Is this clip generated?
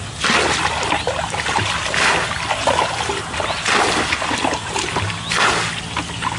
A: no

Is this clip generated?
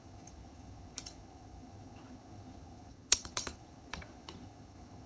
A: yes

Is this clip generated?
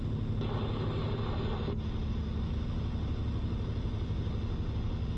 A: no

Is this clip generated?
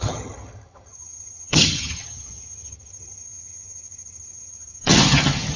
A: yes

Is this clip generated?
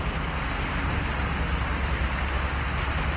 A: no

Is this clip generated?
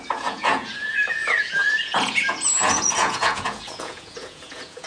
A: yes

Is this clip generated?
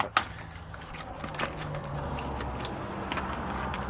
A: no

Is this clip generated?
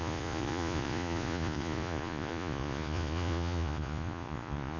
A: yes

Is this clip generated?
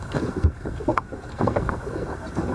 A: yes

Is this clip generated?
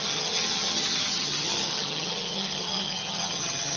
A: yes